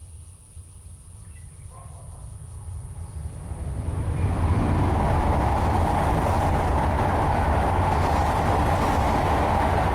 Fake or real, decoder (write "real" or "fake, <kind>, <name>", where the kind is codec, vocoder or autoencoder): real